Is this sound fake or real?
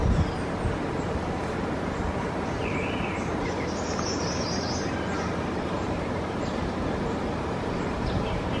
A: fake